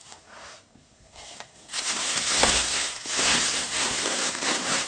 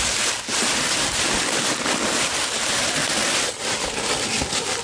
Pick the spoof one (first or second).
first